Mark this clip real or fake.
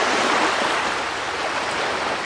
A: real